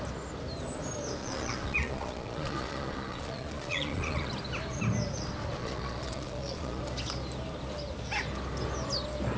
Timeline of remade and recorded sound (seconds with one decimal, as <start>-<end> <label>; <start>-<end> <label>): 0.0-1.2 recorded; 1.2-4.3 remade; 4.3-5.6 recorded; 5.6-6.8 remade; 6.8-9.4 recorded